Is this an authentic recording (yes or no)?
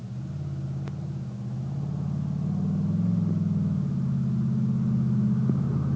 yes